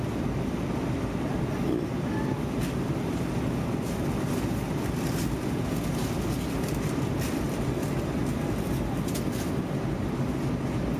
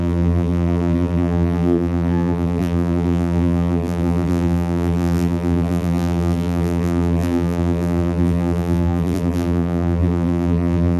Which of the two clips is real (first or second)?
first